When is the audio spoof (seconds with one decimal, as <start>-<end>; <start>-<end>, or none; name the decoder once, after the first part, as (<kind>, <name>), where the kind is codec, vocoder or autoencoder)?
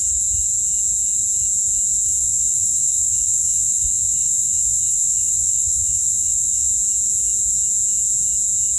2.2-6.7 (vocoder, Vocos)